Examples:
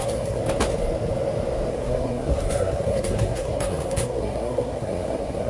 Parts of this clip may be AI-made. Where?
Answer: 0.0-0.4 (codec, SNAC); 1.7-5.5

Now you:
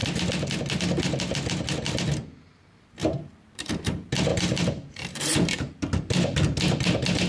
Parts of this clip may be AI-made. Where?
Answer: 3.0-3.7 (vocoder, BigVGAN v2); 4.3-5.7

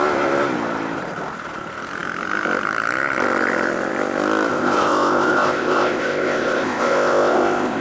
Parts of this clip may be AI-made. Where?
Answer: 4.5-7.8 (codec, ZipCodec)

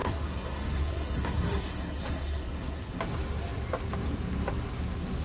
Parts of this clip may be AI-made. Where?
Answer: 0.0-3.0 (codec, SNAC)